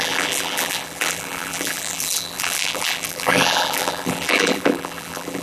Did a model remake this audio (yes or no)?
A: yes